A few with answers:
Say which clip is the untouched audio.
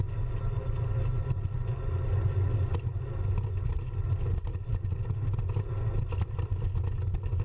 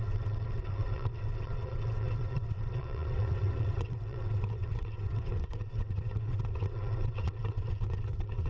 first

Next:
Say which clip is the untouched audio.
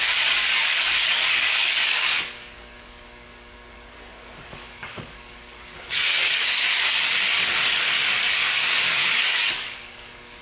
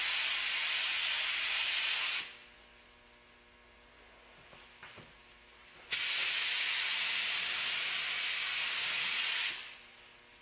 second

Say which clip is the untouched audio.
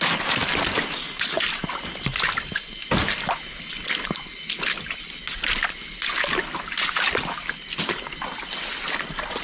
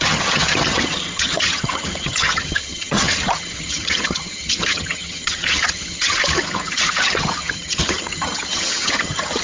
first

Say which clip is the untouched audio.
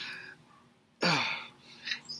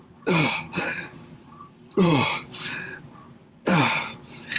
first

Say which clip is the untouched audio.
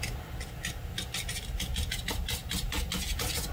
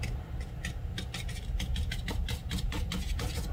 first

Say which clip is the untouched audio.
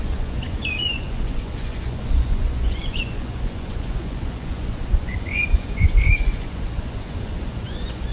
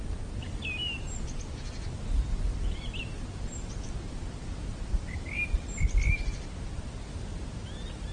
second